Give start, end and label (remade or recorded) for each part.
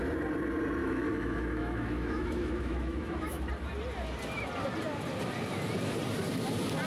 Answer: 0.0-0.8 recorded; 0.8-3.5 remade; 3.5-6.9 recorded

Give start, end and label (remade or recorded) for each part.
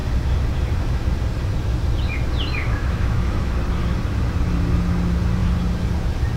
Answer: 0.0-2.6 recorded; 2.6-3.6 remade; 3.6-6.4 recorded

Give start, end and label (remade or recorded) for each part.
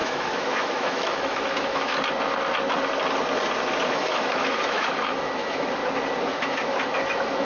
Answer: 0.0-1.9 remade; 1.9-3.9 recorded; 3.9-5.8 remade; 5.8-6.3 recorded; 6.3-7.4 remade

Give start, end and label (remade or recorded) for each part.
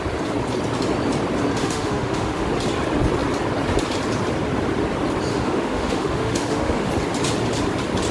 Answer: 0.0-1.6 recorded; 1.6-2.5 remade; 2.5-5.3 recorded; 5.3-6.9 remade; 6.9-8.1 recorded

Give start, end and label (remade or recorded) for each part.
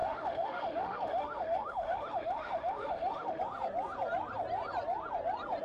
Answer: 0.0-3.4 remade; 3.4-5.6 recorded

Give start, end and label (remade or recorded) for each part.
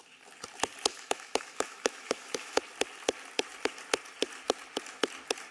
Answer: 0.0-0.9 recorded; 0.9-2.6 remade; 2.6-5.5 recorded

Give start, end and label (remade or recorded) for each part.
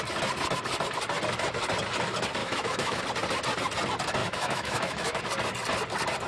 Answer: 0.0-2.4 recorded; 2.4-3.0 remade; 3.0-4.2 recorded; 4.2-5.2 remade; 5.2-6.3 recorded